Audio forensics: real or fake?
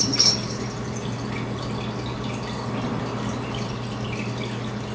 real